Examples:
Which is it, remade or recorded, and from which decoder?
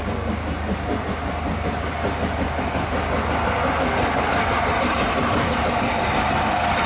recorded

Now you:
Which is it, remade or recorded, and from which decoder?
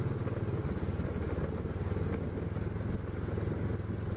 recorded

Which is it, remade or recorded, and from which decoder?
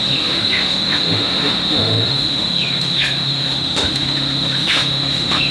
remade, autoencoder, DAC-VAE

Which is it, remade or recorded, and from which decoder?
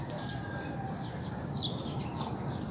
recorded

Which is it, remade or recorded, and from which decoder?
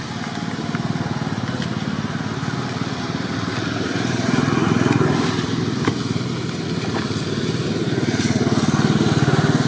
recorded